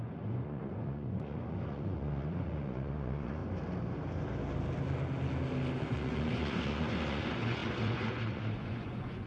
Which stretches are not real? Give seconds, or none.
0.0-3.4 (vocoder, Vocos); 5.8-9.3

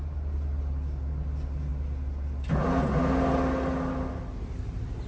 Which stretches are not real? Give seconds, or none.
none

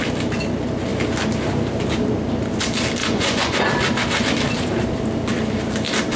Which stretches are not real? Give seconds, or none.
3.0-3.7 (vocoder, Vocos)

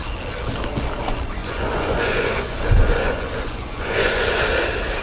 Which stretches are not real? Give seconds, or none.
1.4-4.4 (vocoder, Vocos)